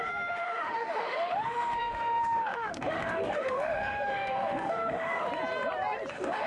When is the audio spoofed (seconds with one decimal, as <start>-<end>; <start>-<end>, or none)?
0.0-5.3; 6.1-6.5